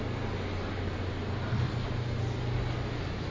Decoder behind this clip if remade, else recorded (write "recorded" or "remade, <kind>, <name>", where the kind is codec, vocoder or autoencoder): recorded